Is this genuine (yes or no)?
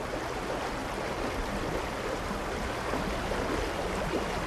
yes